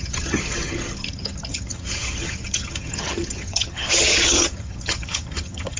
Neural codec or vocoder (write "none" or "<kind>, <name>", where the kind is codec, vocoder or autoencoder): vocoder, HiFi-GAN